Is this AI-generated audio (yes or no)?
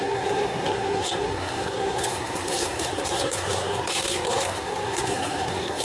yes